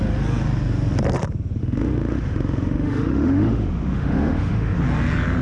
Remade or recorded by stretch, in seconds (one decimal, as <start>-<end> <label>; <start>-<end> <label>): 0.0-1.6 recorded; 1.6-4.8 remade; 4.8-5.4 recorded